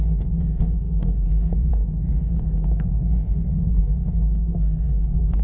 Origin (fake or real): fake